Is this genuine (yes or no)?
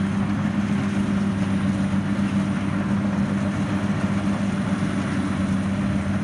yes